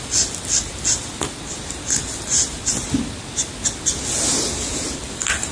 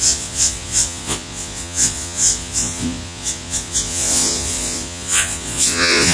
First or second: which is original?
first